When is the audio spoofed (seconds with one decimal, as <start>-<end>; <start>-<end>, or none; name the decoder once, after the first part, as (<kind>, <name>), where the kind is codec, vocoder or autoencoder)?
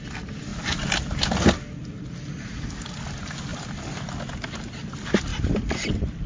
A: 3.5-4.2 (vocoder, BigVGAN v2); 5.3-6.3